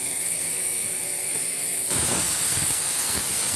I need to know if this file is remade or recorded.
remade